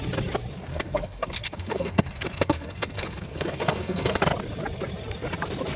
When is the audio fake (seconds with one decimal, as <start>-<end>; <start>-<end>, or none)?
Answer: 0.7-4.2